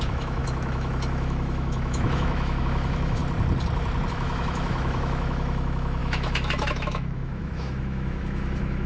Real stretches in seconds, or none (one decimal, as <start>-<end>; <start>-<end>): 3.2-4.1